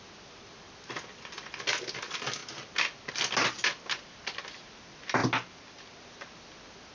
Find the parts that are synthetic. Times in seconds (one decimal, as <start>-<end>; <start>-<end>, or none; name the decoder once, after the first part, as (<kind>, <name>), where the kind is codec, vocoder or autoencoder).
none

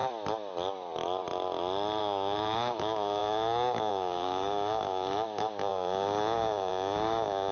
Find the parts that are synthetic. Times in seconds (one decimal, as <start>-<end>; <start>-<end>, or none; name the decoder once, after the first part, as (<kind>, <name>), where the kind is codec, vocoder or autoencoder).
2.0-7.5 (codec, DAC)

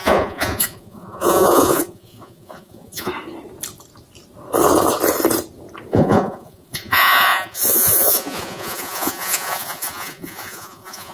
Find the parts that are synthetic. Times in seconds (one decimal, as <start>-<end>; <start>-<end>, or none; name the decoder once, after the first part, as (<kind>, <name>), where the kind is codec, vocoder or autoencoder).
0.0-3.1 (vocoder, Vocos); 5.9-11.1

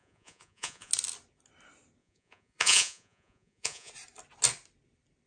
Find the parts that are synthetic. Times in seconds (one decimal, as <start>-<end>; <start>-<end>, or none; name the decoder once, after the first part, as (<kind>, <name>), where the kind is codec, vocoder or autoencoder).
0.0-0.9 (vocoder, Vocos); 2.0-3.9

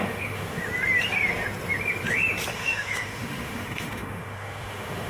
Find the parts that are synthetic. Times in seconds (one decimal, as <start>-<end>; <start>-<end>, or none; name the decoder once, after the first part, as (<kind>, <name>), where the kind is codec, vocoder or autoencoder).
0.0-0.6 (autoencoder, DAC-VAE); 2.5-5.1

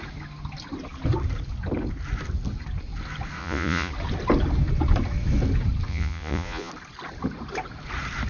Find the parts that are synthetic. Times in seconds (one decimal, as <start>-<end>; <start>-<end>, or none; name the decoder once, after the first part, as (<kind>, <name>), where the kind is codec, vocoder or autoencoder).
3.4-3.9 (vocoder, Vocos); 5.9-6.7

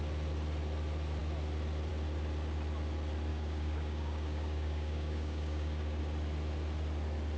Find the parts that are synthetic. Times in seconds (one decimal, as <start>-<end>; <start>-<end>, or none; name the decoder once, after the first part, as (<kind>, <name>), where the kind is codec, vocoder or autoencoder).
3.3-6.0 (codec, DAC)